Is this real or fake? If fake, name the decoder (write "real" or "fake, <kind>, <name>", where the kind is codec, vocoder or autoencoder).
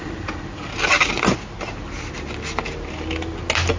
real